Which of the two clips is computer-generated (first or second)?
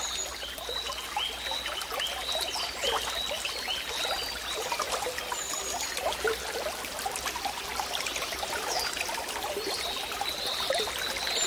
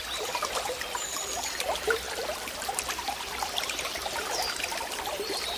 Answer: second